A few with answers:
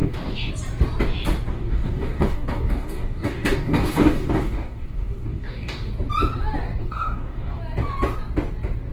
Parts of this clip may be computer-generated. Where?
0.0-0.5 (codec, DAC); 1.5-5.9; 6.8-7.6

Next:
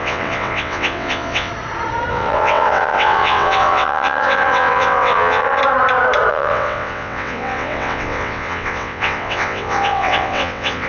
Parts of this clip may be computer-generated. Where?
0.0-1.5 (vocoder, WaveNeXt); 2.1-5.6; 6.3-10.9

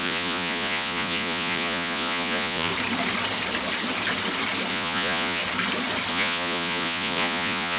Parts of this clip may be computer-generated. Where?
0.0-2.7 (vocoder, Vocos); 4.7-5.4; 6.1-7.8

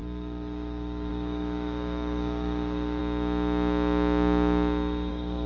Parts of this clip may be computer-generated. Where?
0.0-3.0 (codec, DAC); 5.1-5.5

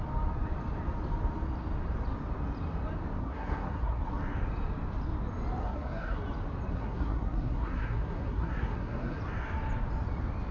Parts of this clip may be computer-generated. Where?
3.2-4.1 (codec, SNAC); 5.6-6.2; 6.7-9.2